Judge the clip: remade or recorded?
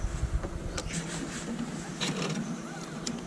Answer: recorded